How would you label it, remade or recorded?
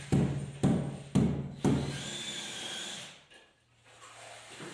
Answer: recorded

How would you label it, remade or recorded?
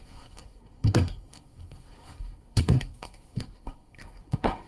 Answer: remade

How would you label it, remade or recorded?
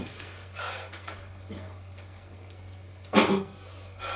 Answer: remade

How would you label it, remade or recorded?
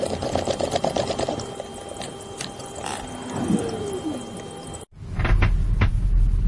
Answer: recorded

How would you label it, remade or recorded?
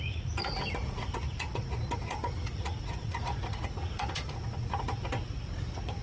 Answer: remade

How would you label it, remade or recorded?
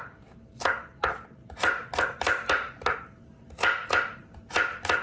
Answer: recorded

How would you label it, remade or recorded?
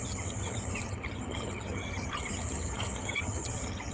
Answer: remade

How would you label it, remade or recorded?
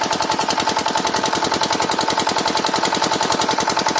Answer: recorded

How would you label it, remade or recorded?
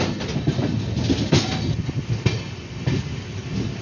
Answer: recorded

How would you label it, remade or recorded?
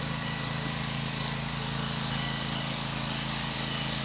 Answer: remade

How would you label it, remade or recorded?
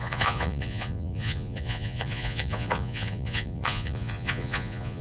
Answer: remade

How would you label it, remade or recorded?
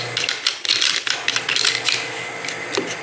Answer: recorded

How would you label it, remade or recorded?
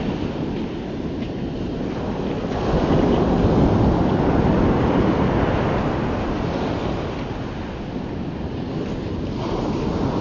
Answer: recorded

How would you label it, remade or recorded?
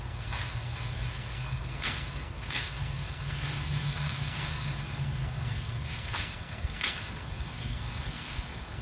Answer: remade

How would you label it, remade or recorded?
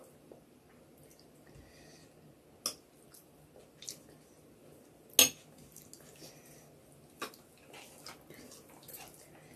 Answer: recorded